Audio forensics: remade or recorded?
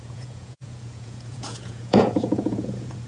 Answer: remade